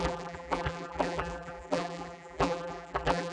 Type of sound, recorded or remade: remade